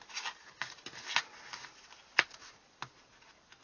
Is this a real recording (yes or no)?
yes